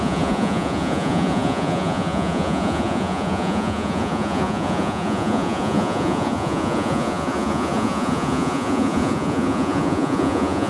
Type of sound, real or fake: fake